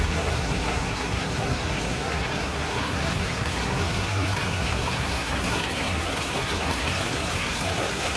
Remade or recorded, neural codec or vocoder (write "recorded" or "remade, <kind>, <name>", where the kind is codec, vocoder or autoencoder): remade, codec, SNAC